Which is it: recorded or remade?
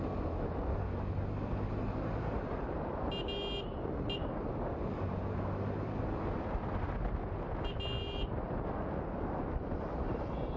recorded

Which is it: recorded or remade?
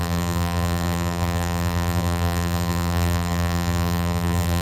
remade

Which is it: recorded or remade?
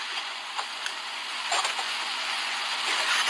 remade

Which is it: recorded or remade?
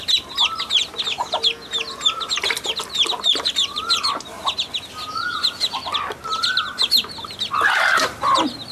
recorded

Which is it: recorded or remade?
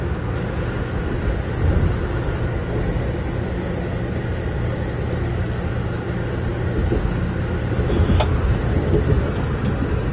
recorded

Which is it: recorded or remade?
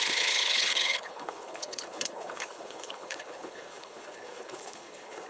remade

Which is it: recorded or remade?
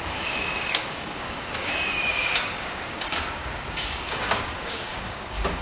remade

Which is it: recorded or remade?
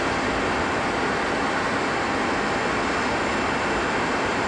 recorded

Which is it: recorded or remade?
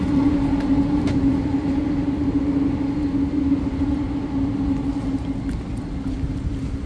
recorded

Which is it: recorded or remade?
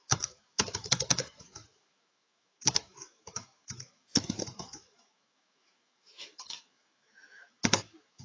remade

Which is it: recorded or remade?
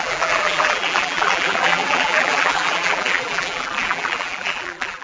remade